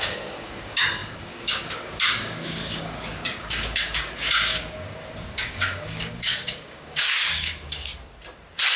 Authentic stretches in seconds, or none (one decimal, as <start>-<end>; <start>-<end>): 7.9-8.8